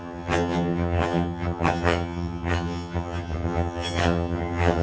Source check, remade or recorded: remade